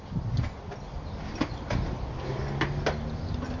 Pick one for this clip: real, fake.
real